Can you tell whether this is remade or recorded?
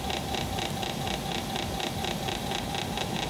recorded